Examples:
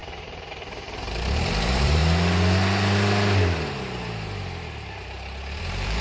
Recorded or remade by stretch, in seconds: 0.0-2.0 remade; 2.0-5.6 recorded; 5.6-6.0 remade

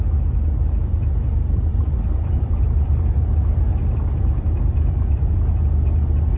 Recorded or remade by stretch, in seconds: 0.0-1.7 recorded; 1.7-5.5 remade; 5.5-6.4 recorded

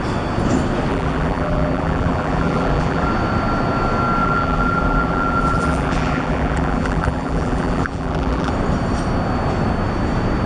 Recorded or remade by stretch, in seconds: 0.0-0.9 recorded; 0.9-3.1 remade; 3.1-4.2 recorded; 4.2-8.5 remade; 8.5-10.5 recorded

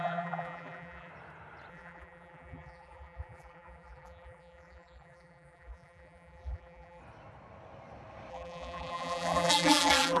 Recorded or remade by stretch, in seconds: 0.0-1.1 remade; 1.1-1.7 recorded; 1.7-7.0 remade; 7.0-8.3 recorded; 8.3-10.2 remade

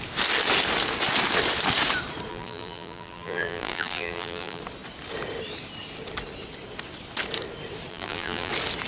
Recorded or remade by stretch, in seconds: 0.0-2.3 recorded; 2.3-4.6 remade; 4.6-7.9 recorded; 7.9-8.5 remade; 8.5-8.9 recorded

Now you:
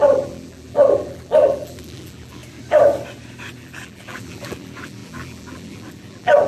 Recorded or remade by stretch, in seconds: 0.0-2.4 remade; 2.4-3.6 recorded; 3.6-6.5 remade

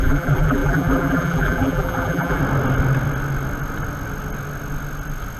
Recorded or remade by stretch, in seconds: 0.0-2.4 remade; 2.4-5.4 recorded

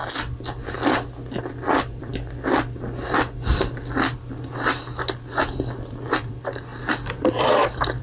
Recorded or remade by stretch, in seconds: 0.0-1.4 recorded; 1.4-2.1 remade; 2.1-5.4 recorded; 5.4-8.0 remade